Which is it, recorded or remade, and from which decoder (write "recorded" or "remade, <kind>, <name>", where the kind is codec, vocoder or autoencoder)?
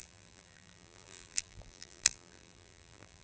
remade, vocoder, BigVGAN v2